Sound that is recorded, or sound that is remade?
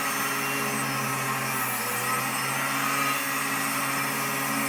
recorded